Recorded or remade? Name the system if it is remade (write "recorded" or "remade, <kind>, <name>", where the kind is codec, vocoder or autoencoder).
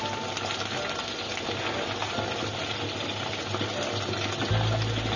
recorded